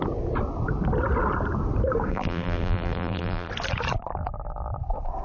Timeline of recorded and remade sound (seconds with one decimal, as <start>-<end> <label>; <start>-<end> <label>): 0.0-2.1 recorded; 2.1-3.5 remade; 3.5-5.2 recorded